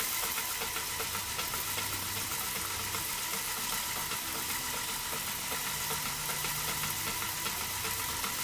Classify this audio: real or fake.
real